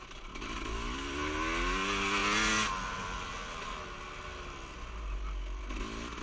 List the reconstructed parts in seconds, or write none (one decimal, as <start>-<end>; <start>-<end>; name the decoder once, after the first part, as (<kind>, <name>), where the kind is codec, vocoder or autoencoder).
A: none